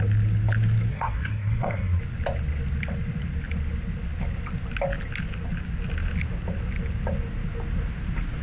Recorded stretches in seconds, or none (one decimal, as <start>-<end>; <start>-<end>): 0.0-0.9; 2.0-8.4